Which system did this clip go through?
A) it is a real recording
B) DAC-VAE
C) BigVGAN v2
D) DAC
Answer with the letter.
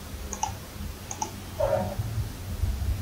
A